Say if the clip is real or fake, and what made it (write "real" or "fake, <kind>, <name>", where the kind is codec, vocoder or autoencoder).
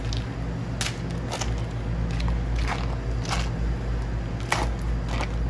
real